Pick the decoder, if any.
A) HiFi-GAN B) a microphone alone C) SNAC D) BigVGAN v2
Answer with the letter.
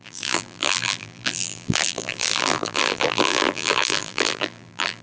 D